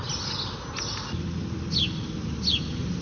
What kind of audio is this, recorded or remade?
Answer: recorded